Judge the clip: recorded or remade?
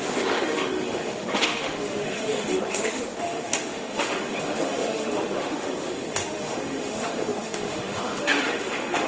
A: remade